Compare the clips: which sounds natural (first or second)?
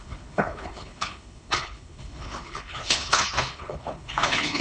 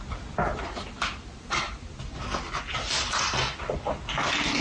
second